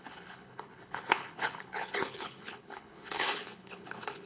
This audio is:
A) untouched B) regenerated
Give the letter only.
B